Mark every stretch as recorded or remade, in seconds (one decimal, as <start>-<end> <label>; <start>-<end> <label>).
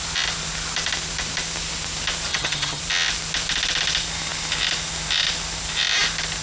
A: 0.0-2.3 recorded; 2.3-2.8 remade; 2.8-6.4 recorded